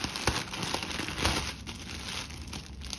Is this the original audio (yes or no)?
yes